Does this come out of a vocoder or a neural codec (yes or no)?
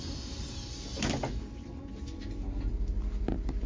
no